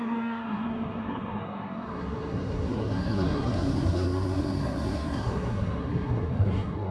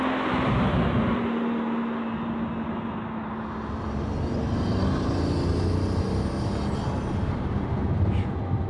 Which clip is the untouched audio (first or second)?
second